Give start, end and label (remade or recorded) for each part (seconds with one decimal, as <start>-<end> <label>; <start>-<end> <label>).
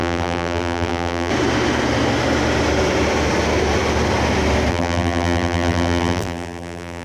0.0-1.3 remade; 1.3-4.7 recorded; 4.7-7.0 remade